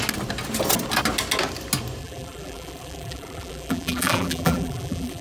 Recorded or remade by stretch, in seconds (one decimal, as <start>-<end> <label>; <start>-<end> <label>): 0.0-2.0 recorded; 2.0-5.2 remade